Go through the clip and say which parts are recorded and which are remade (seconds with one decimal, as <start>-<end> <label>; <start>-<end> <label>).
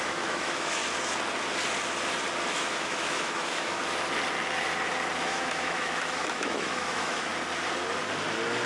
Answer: 0.0-0.8 remade; 0.8-2.5 recorded; 2.5-3.8 remade; 3.8-5.2 recorded; 5.2-7.3 remade; 7.3-8.7 recorded